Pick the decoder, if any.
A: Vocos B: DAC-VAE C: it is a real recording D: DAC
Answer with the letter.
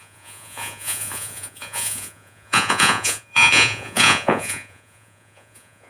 A